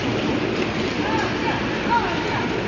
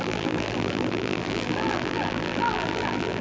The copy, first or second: second